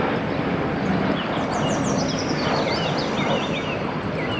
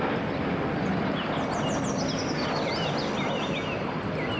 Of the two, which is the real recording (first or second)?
second